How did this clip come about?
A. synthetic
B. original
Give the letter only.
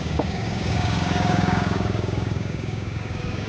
A